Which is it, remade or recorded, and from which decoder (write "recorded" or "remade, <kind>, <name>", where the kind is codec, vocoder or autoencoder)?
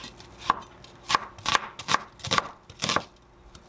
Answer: recorded